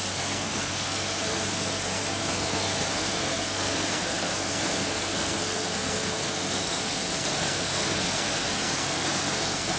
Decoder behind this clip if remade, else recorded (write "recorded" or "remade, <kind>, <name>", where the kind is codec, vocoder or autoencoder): remade, codec, SNAC